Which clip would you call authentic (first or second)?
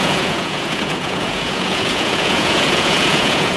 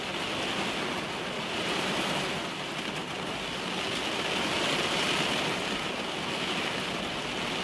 second